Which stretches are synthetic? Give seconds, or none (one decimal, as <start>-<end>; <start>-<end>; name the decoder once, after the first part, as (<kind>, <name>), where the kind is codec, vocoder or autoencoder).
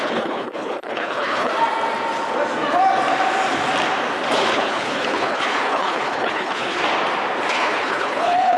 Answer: 0.0-1.5 (codec, HILCodec); 4.5-6.8; 7.5-8.6